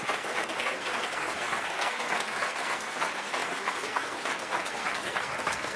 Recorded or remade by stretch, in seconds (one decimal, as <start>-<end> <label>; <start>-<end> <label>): 0.0-5.8 remade